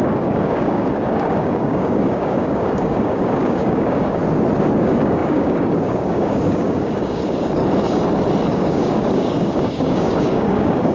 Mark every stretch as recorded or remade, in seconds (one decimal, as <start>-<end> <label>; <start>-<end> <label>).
0.0-4.2 remade; 4.2-4.8 recorded; 4.8-7.6 remade; 7.6-8.5 recorded; 8.5-10.9 remade